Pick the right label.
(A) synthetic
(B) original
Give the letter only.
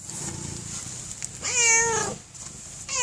B